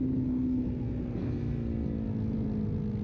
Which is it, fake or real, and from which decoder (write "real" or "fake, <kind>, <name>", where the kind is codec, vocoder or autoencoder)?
real